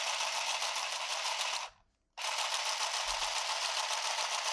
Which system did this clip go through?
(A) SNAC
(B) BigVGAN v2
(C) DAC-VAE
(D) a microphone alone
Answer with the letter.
D